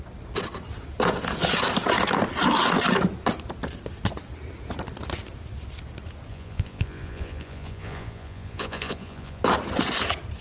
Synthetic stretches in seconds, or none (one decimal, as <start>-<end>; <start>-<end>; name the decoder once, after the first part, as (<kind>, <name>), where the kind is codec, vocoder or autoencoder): 6.3-9.4 (vocoder, Vocos)